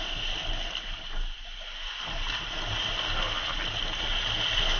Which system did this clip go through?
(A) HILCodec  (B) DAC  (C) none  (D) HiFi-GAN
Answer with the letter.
C